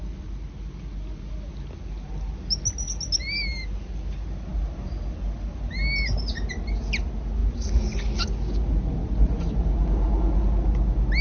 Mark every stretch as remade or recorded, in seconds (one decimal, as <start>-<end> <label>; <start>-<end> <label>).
0.0-11.2 recorded